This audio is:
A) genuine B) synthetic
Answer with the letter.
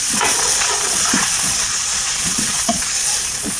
B